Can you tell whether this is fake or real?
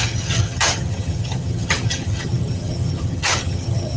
fake